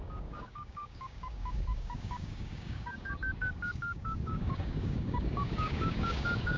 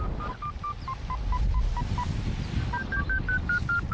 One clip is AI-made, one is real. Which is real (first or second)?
second